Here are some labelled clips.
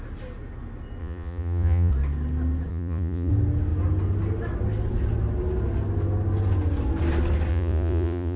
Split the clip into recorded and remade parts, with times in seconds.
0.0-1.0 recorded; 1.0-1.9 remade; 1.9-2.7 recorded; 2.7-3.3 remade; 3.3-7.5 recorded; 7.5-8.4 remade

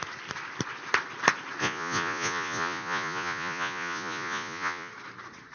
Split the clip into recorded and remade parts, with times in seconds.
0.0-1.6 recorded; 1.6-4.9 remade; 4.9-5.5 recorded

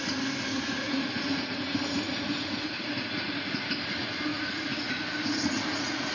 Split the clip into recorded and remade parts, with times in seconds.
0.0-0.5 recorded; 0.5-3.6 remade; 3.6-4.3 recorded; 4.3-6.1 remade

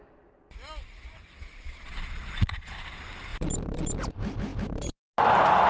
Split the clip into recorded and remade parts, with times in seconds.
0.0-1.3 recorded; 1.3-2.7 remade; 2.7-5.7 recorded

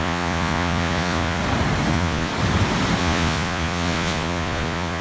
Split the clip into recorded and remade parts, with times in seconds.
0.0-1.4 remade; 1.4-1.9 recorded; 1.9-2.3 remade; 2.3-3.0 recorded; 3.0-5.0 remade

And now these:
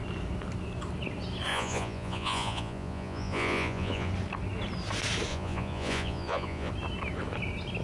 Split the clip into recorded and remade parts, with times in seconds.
0.0-1.5 recorded; 1.5-4.1 remade; 4.1-5.3 recorded; 5.3-6.7 remade; 6.7-7.8 recorded

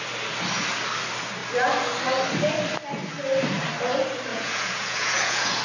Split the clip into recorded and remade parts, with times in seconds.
0.0-4.3 recorded; 4.3-5.6 remade

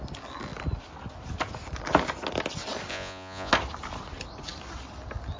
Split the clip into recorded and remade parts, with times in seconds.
0.0-2.9 recorded; 2.9-3.5 remade; 3.5-5.4 recorded